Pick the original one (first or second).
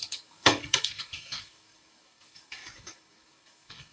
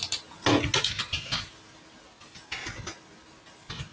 second